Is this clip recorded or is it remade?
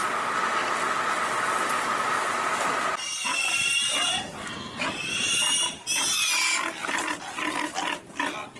recorded